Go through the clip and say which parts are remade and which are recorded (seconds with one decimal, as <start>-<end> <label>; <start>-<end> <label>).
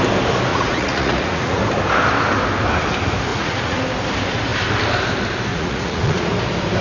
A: 0.0-0.5 recorded; 0.5-1.6 remade; 1.6-3.3 recorded; 3.3-3.8 remade; 3.8-5.5 recorded; 5.5-6.3 remade; 6.3-6.8 recorded